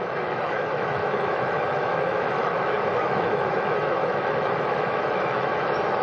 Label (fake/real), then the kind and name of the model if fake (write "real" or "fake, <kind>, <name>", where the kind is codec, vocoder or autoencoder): fake, autoencoder, DAC-VAE